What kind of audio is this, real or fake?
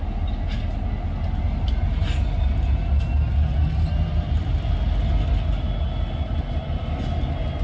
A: real